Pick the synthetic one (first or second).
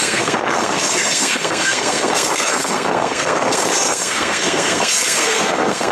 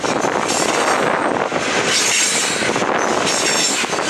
first